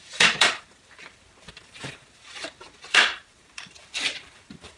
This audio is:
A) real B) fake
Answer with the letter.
B